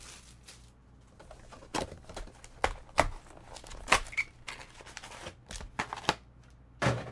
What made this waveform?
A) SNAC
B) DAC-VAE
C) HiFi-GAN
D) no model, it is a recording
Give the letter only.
D